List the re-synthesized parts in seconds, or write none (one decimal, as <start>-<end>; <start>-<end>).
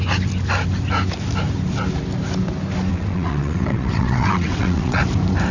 2.9-5.0